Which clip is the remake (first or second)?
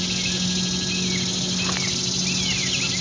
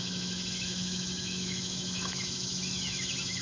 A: second